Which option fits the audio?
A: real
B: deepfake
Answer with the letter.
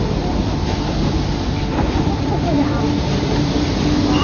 A